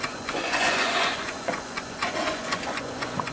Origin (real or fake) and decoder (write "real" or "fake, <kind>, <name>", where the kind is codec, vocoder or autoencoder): fake, vocoder, Vocos